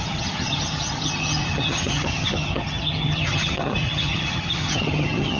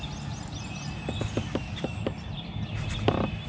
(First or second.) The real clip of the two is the second